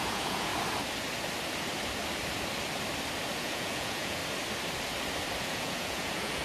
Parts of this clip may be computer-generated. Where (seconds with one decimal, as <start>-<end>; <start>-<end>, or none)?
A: 0.0-0.5; 3.4-4.2; 5.4-6.4